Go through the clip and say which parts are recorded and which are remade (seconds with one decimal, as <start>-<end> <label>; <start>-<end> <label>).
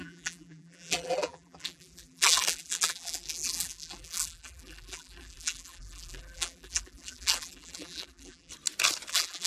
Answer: 0.0-8.5 remade; 8.5-9.1 recorded; 9.1-9.5 remade